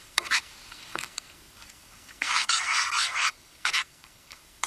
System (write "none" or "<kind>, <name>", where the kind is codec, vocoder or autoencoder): codec, SNAC